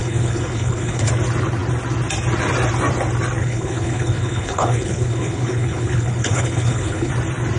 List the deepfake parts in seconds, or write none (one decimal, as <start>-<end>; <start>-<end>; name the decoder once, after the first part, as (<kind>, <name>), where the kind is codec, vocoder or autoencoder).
0.0-1.1 (codec, HILCodec); 3.4-7.1